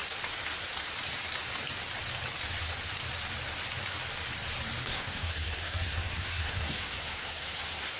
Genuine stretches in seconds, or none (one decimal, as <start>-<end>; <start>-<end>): 0.0-4.8